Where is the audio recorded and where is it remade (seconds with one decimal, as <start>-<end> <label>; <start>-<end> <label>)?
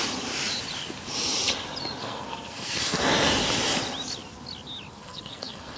0.0-2.0 recorded; 2.0-3.0 remade; 3.0-5.0 recorded; 5.0-5.8 remade